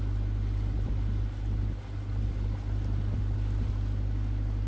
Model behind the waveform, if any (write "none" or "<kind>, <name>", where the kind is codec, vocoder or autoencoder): none